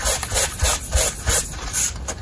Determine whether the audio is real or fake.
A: real